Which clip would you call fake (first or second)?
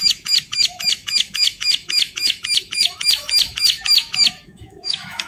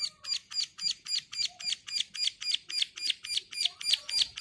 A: first